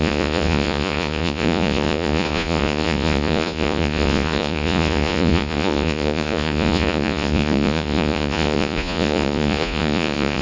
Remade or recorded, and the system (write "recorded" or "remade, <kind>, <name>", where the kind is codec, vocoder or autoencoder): remade, vocoder, Vocos